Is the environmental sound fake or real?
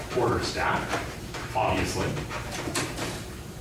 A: fake